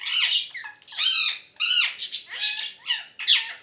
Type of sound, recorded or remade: recorded